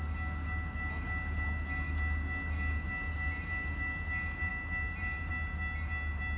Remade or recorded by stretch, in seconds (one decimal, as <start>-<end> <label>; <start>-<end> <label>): 0.0-6.4 recorded